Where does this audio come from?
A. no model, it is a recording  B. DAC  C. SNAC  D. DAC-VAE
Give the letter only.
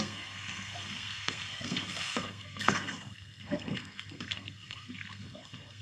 C